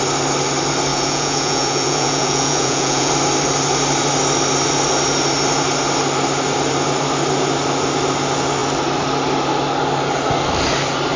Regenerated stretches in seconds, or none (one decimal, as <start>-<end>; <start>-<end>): 0.9-3.1